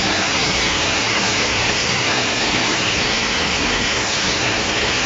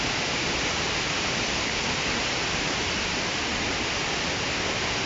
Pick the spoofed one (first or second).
first